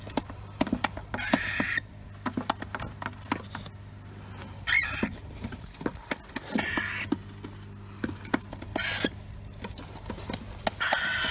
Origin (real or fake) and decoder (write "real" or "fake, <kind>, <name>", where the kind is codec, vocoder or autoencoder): real